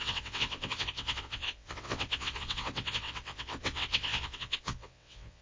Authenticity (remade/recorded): remade